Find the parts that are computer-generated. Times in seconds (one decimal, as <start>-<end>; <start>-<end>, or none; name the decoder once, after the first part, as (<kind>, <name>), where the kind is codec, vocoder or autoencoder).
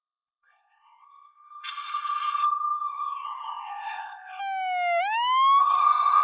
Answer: 0.0-4.4 (codec, SNAC); 5.6-6.2